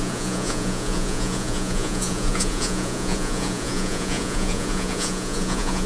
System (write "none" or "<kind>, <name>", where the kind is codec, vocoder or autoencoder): vocoder, Vocos